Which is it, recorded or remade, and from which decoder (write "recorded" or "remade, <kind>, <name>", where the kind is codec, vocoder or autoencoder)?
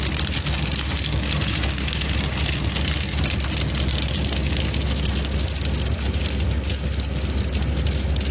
recorded